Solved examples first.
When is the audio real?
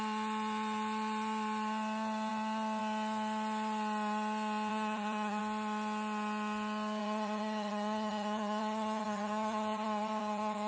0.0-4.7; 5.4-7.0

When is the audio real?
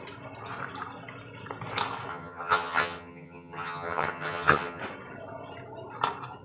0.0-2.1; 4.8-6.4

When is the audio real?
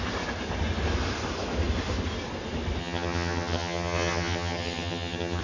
0.0-2.8